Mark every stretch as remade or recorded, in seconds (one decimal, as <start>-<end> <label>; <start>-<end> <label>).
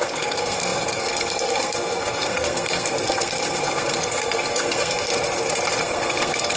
0.0-5.1 remade; 5.1-5.8 recorded; 5.8-6.6 remade